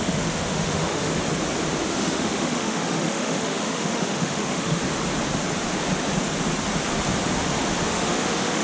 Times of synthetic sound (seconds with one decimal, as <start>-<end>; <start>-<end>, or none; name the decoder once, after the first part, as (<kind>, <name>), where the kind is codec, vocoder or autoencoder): 0.0-1.1 (autoencoder, DAC-VAE); 1.9-4.8; 7.8-8.6